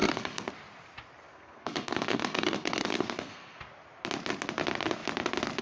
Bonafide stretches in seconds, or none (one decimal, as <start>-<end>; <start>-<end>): 0.5-1.3; 3.6-5.6